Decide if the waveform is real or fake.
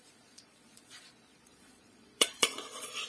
fake